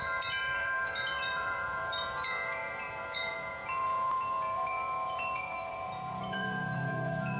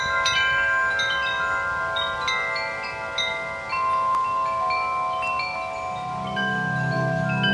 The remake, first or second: first